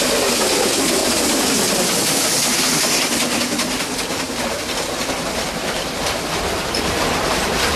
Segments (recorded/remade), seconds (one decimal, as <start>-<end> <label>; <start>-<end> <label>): 0.0-1.0 recorded; 1.0-2.2 remade; 2.2-7.8 recorded